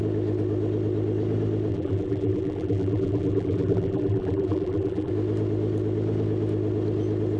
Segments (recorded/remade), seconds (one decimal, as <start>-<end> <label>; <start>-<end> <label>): 0.0-1.7 recorded; 1.7-5.1 remade; 5.1-7.4 recorded